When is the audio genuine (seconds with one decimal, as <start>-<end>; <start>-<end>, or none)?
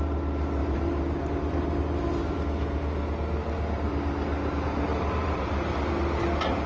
0.0-0.6; 2.4-3.4; 3.9-4.9; 5.9-6.7